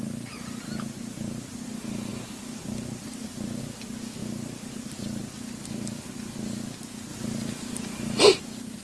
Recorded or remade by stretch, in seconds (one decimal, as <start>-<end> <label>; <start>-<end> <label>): 0.0-8.8 recorded